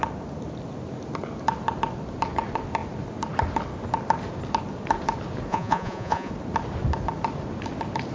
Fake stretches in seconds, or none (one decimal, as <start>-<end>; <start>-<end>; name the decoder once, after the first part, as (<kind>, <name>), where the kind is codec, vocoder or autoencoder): 5.5-6.3 (vocoder, Vocos)